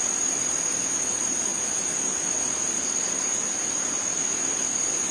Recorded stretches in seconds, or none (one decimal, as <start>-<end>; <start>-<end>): 0.0-5.1